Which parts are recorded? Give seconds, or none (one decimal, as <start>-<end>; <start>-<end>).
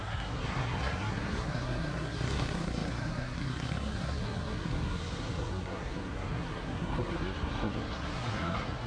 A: none